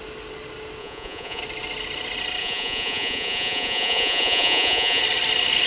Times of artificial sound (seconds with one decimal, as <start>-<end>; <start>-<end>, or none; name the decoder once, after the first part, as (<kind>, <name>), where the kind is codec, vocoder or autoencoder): 0.8-1.4 (vocoder, Vocos); 2.4-5.0